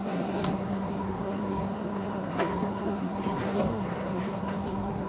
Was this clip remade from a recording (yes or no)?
yes